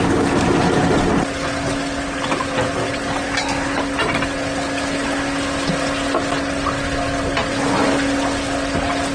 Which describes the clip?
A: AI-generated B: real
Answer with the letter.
B